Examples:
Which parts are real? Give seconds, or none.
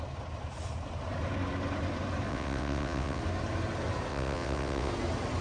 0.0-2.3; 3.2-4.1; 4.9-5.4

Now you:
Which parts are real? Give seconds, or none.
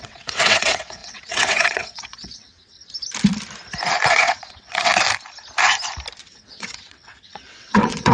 2.8-4.1; 4.9-6.2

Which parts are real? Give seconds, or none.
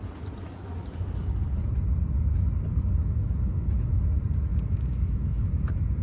0.0-3.0; 4.0-4.5; 5.5-6.0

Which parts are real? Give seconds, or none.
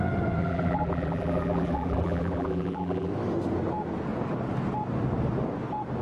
0.0-0.4; 3.1-6.0